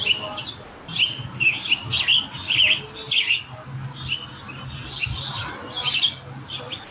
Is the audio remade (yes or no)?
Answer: no